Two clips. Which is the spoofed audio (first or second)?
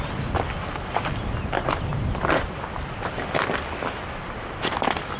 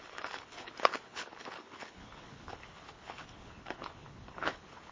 second